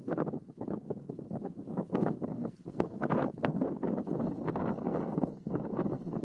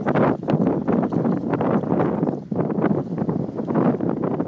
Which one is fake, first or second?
first